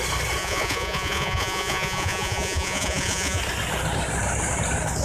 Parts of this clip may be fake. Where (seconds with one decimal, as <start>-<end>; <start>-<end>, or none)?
0.4-3.4